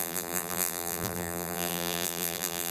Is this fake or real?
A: fake